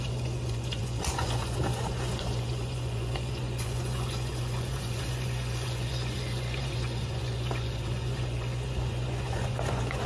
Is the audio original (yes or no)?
no